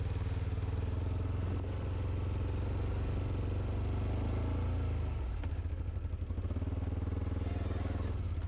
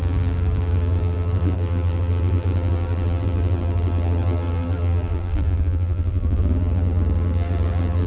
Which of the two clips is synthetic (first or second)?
second